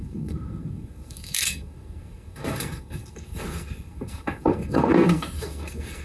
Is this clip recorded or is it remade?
remade